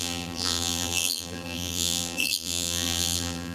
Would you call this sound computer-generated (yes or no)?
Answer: yes